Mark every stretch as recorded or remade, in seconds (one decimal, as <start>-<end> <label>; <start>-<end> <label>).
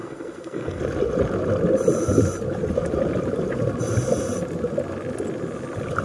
0.0-0.8 remade; 0.8-6.0 recorded